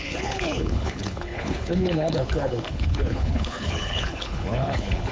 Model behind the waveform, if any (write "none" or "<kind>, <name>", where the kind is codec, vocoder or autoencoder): codec, HILCodec